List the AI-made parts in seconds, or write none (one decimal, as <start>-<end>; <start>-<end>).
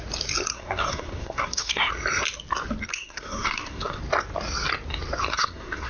0.5-1.9; 2.9-4.0; 5.3-5.9